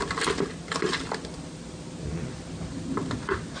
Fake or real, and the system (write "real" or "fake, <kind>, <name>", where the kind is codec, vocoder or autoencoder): real